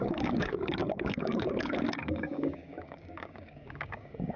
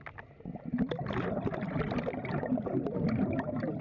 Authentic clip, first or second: second